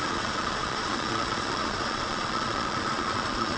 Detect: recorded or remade remade